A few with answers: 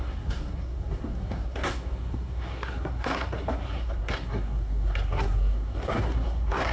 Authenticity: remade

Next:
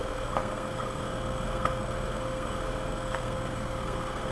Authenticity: remade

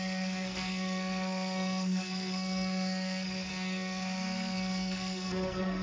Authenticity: remade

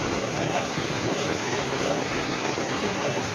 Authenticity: remade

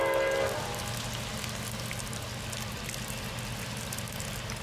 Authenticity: recorded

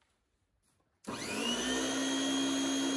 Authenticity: recorded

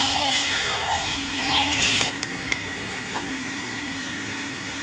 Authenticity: remade